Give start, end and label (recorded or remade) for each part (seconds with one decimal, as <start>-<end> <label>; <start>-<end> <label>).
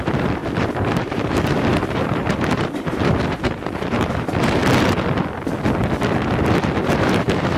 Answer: 0.0-4.6 remade; 4.6-6.9 recorded; 6.9-7.6 remade